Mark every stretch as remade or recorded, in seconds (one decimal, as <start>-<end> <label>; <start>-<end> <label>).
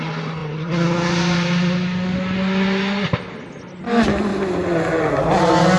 0.0-5.8 recorded